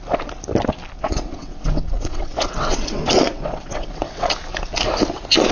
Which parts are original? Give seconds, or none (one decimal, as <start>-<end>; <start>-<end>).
0.0-1.0; 4.3-5.5